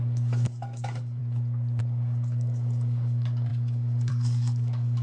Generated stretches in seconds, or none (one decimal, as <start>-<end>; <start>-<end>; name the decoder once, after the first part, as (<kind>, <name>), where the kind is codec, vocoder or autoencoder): 0.0-1.2 (codec, DAC); 1.8-5.0

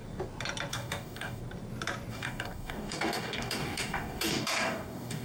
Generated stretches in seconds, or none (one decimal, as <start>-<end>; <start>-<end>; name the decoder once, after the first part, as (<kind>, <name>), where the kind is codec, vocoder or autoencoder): 0.7-1.4 (codec, DAC); 2.1-5.2

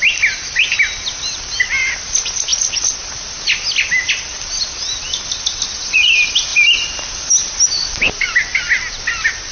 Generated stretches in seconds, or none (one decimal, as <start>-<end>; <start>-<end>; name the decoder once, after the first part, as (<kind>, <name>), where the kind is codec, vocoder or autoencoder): none

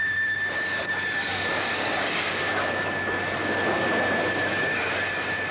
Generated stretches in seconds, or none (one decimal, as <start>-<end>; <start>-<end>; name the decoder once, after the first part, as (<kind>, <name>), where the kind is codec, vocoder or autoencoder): 1.3-2.8 (codec, DAC)

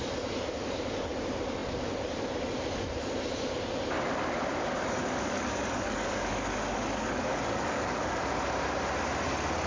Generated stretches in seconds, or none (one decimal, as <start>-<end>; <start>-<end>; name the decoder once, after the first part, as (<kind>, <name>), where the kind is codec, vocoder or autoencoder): 5.0-8.2 (codec, DAC)

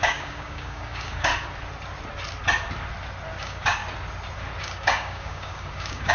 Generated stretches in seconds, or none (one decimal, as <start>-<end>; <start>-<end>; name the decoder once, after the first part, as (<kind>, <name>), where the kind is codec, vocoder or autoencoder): 0.0-1.3 (codec, DAC); 3.4-3.8; 4.6-6.1